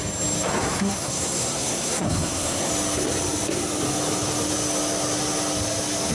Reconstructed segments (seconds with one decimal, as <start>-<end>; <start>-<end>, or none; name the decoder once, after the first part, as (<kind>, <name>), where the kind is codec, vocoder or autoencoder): 0.6-2.7 (codec, SNAC)